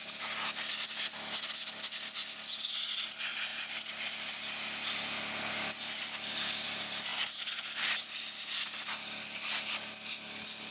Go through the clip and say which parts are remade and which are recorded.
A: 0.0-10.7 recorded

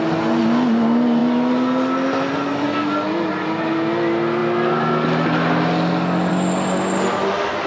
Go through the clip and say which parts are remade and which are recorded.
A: 0.0-7.7 recorded

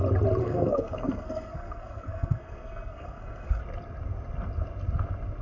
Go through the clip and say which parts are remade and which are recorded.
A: 0.0-0.4 recorded; 0.4-3.6 remade; 3.6-5.4 recorded

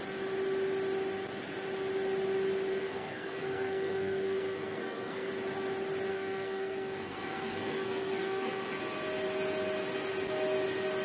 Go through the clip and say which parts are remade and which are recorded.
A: 0.0-2.7 recorded; 2.7-5.3 remade; 5.3-6.1 recorded; 6.1-8.8 remade; 8.8-11.0 recorded

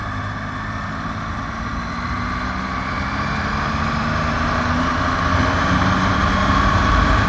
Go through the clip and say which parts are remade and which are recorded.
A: 0.0-7.3 recorded

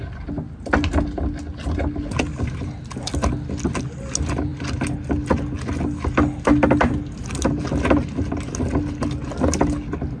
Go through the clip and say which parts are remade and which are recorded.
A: 0.0-10.2 recorded

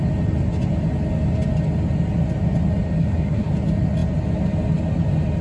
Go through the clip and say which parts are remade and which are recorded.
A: 0.0-3.0 recorded; 3.0-3.5 remade; 3.5-5.4 recorded